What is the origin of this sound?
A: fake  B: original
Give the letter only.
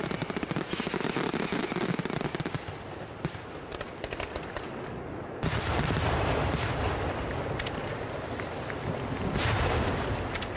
B